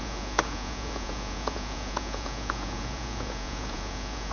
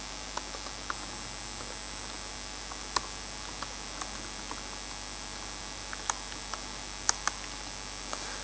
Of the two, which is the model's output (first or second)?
first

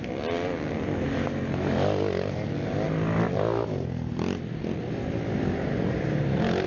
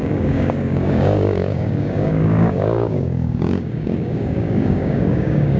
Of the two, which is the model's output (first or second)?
second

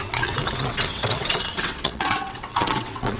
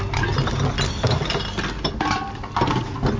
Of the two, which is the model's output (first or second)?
first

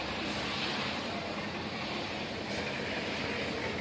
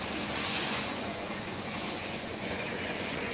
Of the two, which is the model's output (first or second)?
second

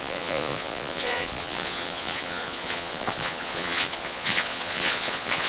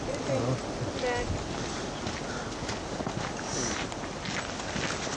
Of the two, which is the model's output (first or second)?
first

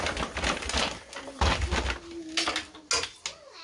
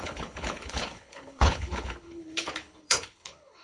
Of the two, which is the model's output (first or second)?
second